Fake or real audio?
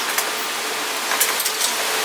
real